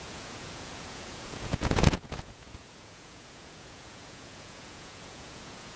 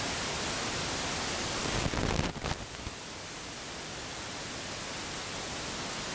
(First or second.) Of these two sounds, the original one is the second